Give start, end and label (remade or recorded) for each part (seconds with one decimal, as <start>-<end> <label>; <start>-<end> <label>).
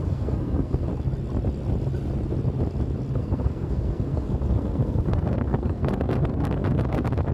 0.0-0.9 remade; 0.9-3.1 recorded; 3.1-7.3 remade